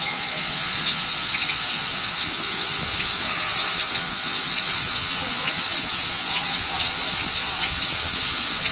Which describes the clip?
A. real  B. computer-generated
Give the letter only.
B